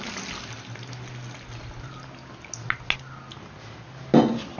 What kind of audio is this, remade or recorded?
recorded